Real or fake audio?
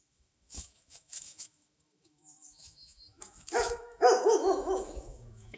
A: fake